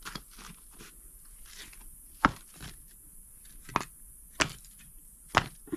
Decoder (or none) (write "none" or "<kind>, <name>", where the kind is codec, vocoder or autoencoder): none